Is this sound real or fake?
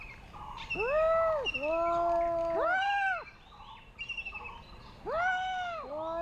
real